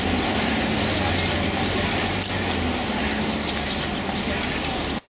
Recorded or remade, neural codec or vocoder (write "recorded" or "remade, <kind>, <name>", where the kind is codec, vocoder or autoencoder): recorded